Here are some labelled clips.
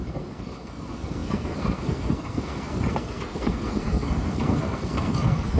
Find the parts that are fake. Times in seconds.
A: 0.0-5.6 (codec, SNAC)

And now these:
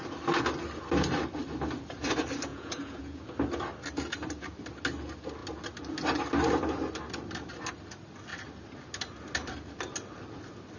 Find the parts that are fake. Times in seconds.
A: 2.5-3.2 (vocoder, Vocos)

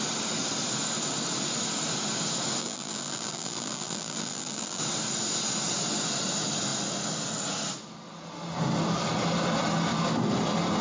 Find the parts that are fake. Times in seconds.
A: 2.6-4.8 (vocoder, BigVGAN v2)

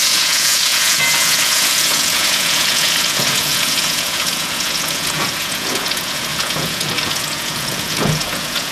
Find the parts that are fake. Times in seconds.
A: 0.0-8.7 (vocoder, Vocos)

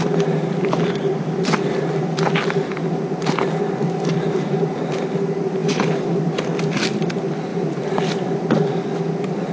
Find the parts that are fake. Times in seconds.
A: 7.5-8.0 (vocoder, BigVGAN v2)